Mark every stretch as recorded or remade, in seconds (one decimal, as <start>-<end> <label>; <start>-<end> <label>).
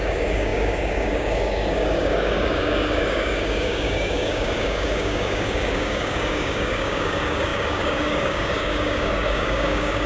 0.0-10.1 remade